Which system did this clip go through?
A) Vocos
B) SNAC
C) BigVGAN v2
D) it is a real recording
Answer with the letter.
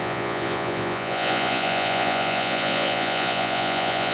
A